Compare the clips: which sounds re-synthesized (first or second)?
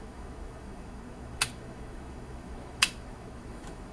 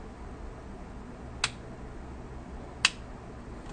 first